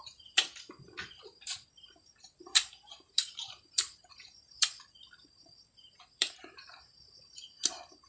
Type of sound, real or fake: fake